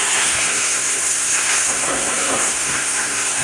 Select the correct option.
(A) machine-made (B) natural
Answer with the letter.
A